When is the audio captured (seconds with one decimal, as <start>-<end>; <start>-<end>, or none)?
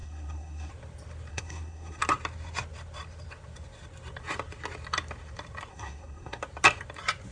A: 0.7-1.3; 2.0-5.7; 6.4-7.3